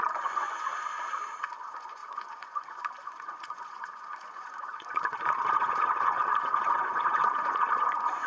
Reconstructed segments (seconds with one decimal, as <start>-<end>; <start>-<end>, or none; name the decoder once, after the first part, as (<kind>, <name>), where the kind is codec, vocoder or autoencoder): 0.0-0.7 (vocoder, Vocos); 1.6-8.3

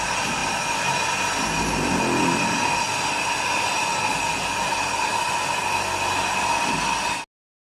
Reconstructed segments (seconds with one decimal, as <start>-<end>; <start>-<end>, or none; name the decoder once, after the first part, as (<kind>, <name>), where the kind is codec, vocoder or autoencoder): none